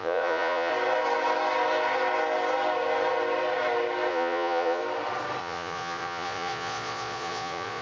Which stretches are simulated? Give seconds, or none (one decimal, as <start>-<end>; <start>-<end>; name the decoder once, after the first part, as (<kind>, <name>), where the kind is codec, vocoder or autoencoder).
0.0-0.7 (vocoder, Vocos); 4.1-4.8; 5.4-7.8